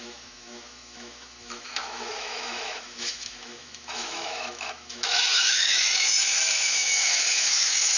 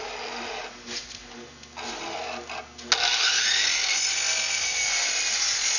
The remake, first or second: first